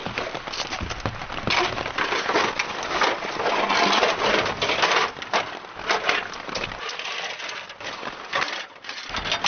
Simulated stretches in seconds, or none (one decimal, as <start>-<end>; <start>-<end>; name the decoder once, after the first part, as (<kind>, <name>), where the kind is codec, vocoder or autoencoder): none

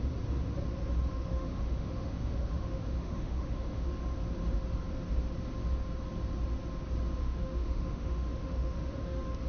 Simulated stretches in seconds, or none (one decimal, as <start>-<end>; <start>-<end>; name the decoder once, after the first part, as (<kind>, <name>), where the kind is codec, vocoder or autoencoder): 1.1-3.9 (autoencoder, DAC-VAE); 7.2-9.5

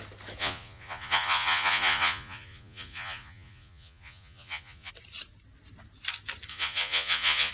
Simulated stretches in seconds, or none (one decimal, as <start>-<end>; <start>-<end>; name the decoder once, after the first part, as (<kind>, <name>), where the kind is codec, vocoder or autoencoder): 0.4-4.9 (vocoder, Vocos); 6.5-7.5

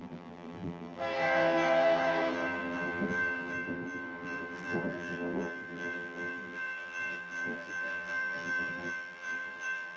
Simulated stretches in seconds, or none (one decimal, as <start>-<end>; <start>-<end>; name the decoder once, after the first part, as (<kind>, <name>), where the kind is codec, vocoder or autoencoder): 0.0-10.0 (vocoder, BigVGAN v2)

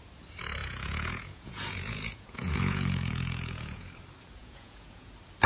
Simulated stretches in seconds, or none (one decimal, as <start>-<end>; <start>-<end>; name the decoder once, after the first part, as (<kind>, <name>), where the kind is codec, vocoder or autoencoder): 0.6-3.9 (vocoder, Vocos); 4.4-5.1

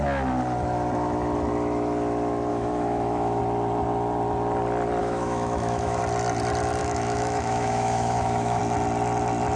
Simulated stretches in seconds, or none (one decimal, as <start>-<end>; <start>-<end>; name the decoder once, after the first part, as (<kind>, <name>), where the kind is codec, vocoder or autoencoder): 2.5-3.4 (autoencoder, DAC-VAE); 5.0-6.0; 6.8-8.6